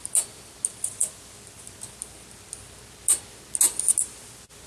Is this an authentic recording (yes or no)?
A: yes